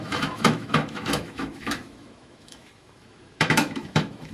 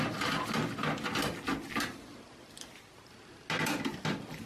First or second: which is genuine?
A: second